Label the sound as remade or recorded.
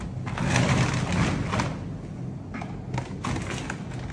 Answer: recorded